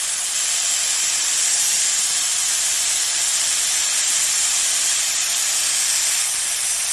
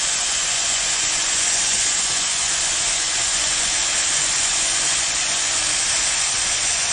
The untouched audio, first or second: first